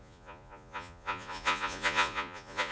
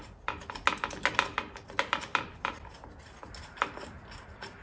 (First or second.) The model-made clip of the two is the first